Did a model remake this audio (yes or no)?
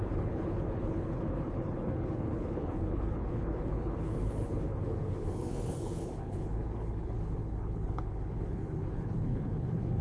yes